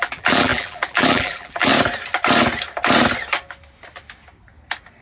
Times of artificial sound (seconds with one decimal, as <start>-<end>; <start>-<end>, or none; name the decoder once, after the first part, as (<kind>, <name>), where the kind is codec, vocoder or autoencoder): 0.0-1.7 (vocoder, BigVGAN v2)